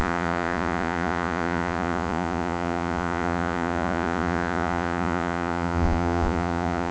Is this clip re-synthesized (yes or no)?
yes